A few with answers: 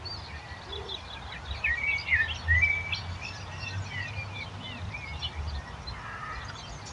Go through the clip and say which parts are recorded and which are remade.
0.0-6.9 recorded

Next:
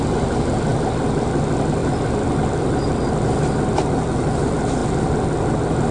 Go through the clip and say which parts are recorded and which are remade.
0.0-5.9 recorded

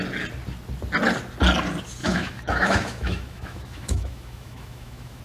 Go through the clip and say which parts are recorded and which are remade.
0.0-2.0 recorded; 2.0-5.2 remade

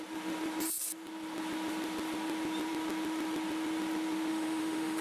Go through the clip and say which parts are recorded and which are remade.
0.0-4.3 recorded; 4.3-5.0 remade